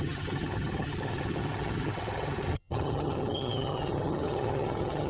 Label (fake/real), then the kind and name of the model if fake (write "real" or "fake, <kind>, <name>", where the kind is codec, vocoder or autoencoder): fake, vocoder, HiFi-GAN